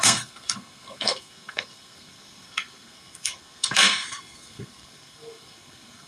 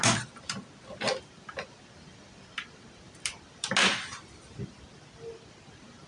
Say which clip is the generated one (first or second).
first